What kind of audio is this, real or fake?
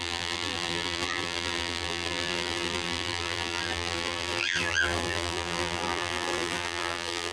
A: fake